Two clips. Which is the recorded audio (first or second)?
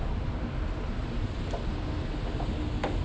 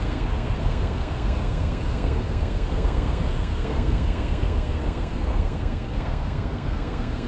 first